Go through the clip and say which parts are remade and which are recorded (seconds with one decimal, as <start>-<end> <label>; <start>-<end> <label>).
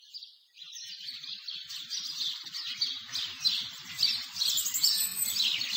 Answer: 0.0-5.8 recorded